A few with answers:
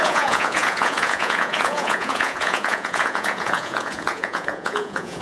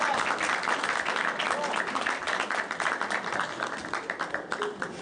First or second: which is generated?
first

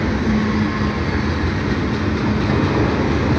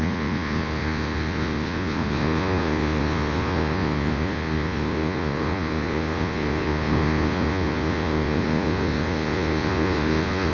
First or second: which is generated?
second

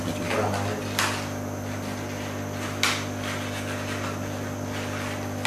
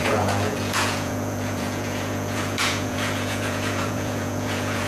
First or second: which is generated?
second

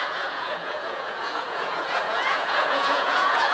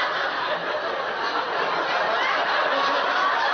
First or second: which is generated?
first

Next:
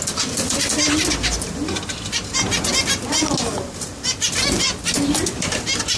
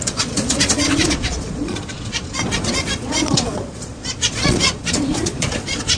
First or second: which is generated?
second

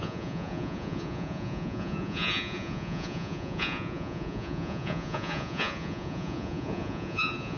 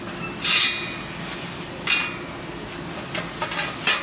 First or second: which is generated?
first